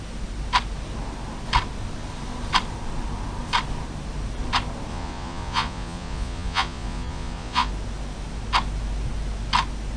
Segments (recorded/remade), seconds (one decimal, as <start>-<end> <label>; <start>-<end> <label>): 0.0-4.9 recorded; 4.9-7.7 remade; 7.7-10.0 recorded

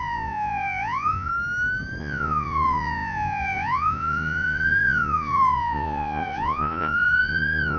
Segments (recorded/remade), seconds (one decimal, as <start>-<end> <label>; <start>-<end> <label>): 0.0-1.3 remade; 1.3-2.0 recorded; 2.0-7.8 remade

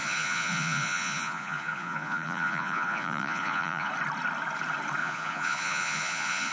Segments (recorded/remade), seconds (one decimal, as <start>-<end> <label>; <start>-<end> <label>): 0.0-3.9 remade; 3.9-5.0 recorded; 5.0-6.5 remade